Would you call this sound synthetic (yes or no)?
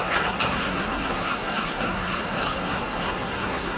yes